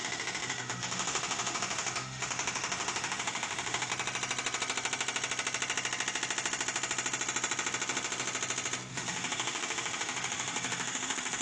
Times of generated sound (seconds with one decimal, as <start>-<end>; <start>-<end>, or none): 0.0-3.9; 8.9-11.4